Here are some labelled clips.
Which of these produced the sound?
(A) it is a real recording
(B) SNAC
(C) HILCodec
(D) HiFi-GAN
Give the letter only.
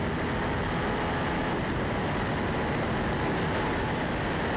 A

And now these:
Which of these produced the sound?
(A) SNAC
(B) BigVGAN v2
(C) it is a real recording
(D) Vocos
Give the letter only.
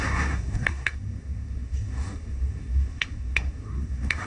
A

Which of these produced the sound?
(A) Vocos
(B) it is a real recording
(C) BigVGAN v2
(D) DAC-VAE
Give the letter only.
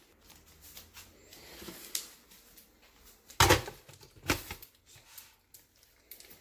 B